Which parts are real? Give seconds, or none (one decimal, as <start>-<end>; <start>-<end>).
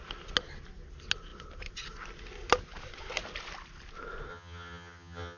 0.0-4.3